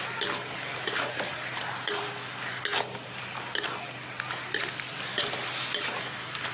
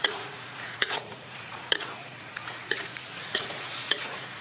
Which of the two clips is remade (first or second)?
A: second